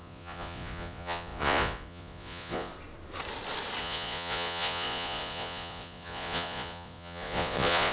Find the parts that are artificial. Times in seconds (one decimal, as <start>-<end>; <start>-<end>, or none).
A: 0.0-2.7; 3.8-7.9